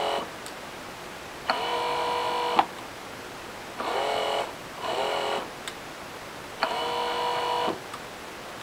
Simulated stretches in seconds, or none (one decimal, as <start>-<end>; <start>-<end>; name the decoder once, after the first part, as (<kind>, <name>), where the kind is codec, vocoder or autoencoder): none